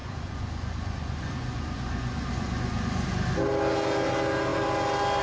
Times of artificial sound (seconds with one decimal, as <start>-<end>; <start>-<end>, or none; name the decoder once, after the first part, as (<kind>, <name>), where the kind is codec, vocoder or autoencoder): 0.0-3.1 (vocoder, Vocos)